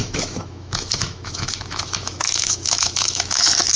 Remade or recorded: remade